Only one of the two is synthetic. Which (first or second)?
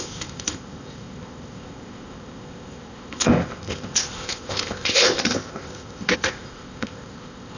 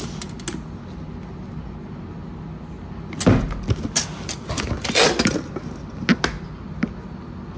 first